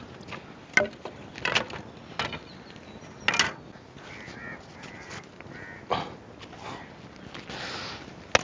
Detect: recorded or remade recorded